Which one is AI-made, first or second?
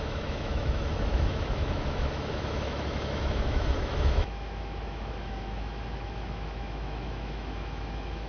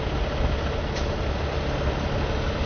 first